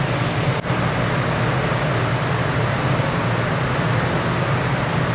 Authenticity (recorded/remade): recorded